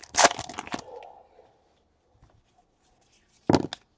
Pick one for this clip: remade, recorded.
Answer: recorded